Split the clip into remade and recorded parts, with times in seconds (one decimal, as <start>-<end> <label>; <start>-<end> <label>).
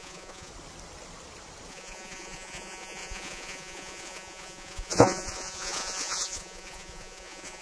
0.0-0.5 remade; 0.5-1.7 recorded; 1.7-7.6 remade